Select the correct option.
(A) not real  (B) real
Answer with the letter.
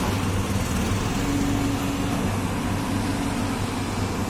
B